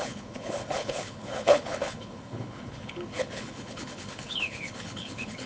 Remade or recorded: remade